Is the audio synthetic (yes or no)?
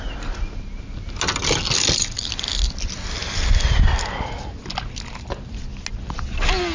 no